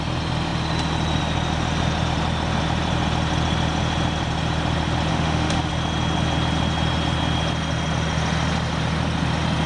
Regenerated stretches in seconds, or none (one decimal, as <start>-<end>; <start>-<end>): 5.1-5.7